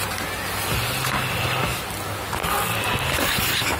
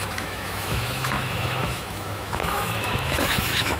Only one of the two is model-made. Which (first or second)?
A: second